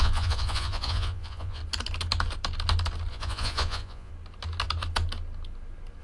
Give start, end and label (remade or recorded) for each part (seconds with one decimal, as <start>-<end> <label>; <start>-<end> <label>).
0.0-1.6 remade; 1.6-3.1 recorded; 3.1-4.1 remade; 4.1-6.0 recorded